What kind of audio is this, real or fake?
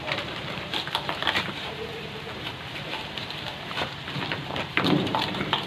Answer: fake